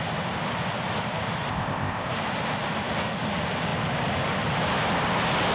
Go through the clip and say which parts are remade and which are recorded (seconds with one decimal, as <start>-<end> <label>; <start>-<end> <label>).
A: 0.0-1.5 recorded; 1.5-2.1 remade; 2.1-5.5 recorded